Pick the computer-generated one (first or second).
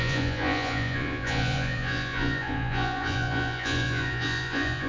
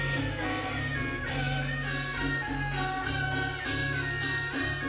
first